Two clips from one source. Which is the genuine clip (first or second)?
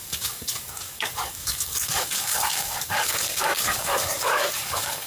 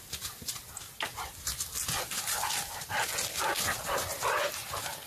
second